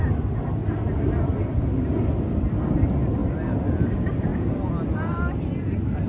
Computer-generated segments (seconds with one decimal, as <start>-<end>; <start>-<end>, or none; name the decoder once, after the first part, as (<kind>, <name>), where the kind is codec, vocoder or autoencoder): none